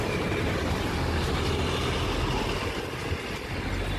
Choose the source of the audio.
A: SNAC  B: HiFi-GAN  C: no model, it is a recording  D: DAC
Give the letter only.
C